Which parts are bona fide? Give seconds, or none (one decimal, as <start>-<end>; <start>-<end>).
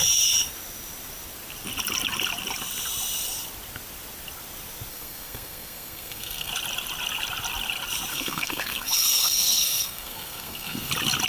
0.0-4.9; 6.5-8.1; 10.9-11.3